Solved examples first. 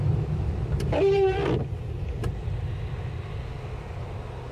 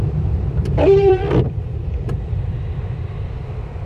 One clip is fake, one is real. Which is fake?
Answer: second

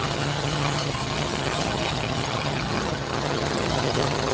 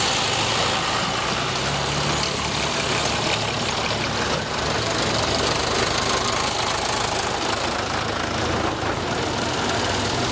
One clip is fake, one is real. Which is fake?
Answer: first